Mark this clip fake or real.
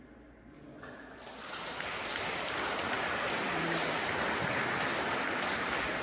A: real